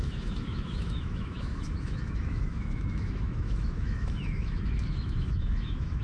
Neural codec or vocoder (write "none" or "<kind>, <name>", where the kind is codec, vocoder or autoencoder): autoencoder, DAC-VAE